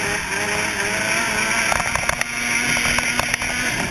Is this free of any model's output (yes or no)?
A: yes